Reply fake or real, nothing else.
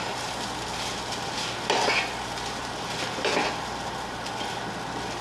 real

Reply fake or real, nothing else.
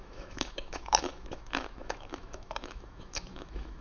fake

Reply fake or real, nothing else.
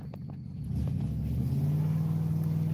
real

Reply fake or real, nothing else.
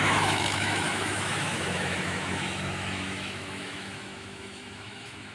fake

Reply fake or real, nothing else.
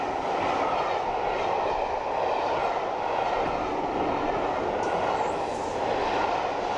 real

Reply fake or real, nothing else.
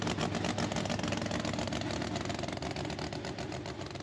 real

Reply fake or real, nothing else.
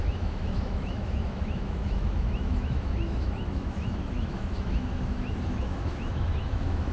fake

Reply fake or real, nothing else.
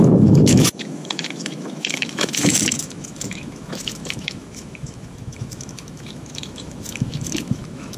fake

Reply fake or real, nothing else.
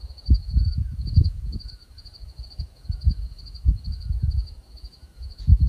fake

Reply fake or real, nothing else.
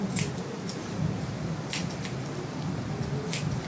real